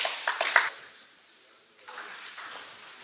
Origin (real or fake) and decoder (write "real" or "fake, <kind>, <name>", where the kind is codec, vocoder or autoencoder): fake, vocoder, BigVGAN v2